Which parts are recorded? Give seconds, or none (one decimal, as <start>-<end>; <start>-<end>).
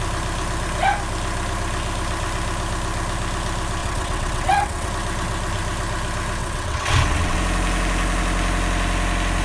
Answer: 0.0-3.8; 4.9-6.4; 7.4-9.4